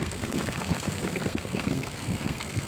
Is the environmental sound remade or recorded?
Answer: remade